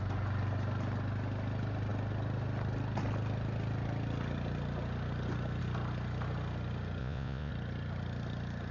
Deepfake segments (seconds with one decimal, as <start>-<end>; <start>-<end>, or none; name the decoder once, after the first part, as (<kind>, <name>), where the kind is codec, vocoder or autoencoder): 7.0-7.5 (vocoder, Vocos)